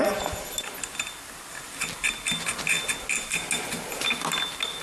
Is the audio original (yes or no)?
yes